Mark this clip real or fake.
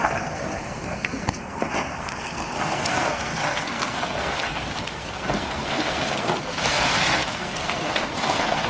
fake